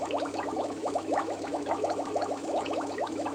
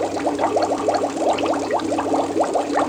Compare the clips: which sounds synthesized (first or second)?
first